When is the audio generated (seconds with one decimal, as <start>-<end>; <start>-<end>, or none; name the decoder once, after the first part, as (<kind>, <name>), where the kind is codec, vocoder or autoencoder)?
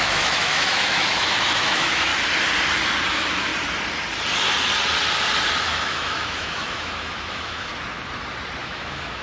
0.0-2.1 (autoencoder, DAC-VAE); 3.1-3.5; 5.6-7.7; 8.6-9.2